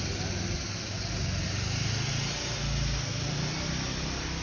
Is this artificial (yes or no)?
no